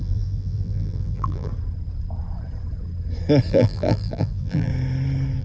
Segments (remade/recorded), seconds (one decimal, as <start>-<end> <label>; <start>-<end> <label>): 0.0-1.5 remade; 1.5-3.5 recorded; 3.5-4.7 remade; 4.7-5.4 recorded